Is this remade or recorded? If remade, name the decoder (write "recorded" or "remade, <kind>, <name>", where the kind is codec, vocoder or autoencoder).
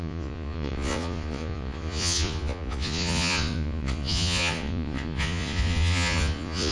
remade, vocoder, Vocos